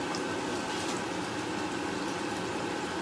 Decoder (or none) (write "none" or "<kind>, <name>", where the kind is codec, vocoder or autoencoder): none